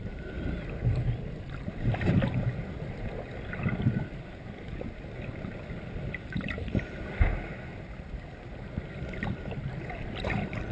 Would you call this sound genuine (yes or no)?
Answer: yes